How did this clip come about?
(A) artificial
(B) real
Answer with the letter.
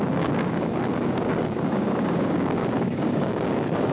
A